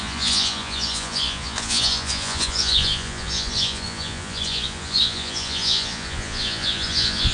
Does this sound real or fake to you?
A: fake